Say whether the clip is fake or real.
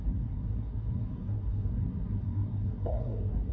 fake